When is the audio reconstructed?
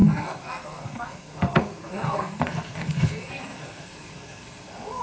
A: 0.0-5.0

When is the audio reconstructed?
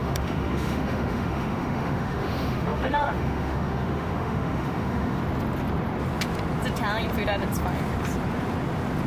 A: 0.0-5.2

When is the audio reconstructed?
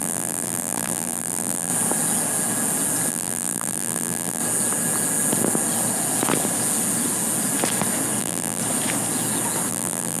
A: 0.0-1.7; 3.1-4.4; 8.2-8.6; 9.7-10.2